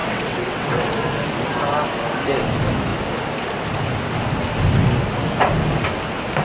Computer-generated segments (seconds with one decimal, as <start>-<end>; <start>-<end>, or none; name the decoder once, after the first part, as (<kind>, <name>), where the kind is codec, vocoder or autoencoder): 0.0-0.9 (vocoder, WaveNeXt)